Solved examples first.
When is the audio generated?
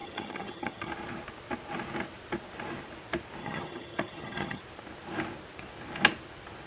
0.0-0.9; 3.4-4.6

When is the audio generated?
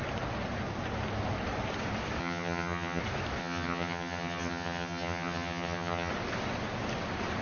2.2-3.0; 3.4-6.1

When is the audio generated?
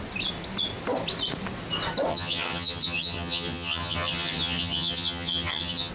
2.1-5.9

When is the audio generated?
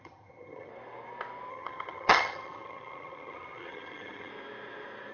0.0-0.7; 1.5-4.3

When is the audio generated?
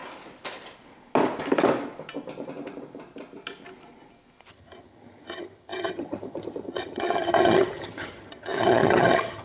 4.5-9.4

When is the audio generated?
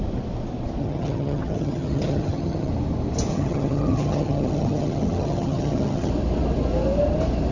0.8-2.7; 3.3-6.1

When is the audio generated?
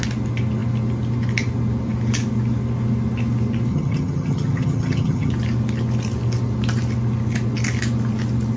3.7-5.3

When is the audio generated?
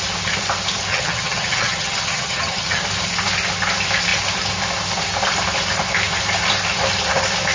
0.9-2.8